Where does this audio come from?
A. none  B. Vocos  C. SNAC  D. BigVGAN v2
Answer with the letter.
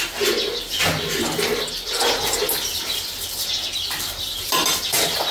A